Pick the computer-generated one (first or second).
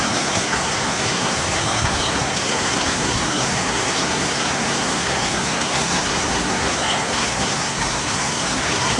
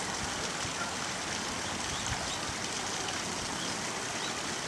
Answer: first